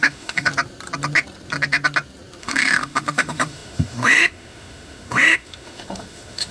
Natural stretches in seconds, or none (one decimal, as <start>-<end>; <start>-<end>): 0.5-2.4